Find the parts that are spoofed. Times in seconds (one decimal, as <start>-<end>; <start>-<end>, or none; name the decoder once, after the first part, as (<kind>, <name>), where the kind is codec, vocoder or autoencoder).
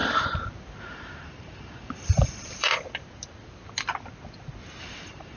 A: 0.8-2.7 (vocoder, BigVGAN v2); 4.8-5.4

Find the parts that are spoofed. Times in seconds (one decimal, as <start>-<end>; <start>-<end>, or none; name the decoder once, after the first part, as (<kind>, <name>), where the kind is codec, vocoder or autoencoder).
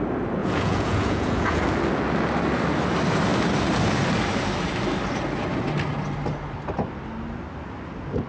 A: 0.4-1.6 (vocoder, Vocos)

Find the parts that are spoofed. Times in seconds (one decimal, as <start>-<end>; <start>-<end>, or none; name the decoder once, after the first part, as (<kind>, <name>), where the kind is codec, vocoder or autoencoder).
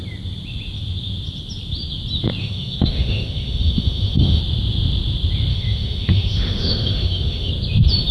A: 2.4-4.4 (autoencoder, DAC-VAE); 5.5-7.5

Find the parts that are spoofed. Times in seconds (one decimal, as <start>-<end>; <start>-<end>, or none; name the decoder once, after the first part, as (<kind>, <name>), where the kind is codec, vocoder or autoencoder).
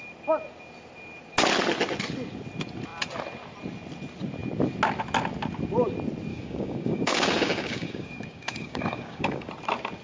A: 6.3-9.5 (codec, DAC)